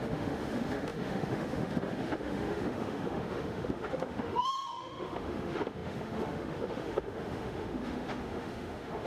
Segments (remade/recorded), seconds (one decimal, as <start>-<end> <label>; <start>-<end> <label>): 0.0-9.1 remade